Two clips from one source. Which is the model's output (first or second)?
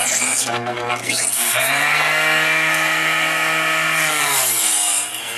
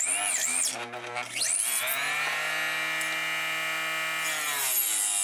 first